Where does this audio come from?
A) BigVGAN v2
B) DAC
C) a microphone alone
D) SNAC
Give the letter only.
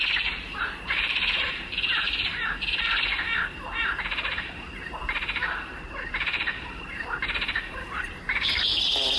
A